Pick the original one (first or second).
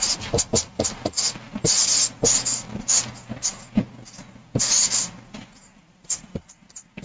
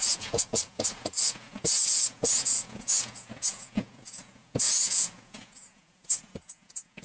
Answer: first